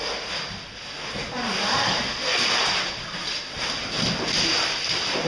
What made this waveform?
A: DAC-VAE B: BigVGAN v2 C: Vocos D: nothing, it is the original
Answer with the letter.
D